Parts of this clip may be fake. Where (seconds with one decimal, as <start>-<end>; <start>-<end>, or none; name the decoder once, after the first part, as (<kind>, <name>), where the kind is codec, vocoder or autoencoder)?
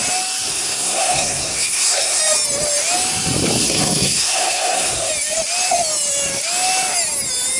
0.5-2.2 (codec, SNAC); 3.6-5.1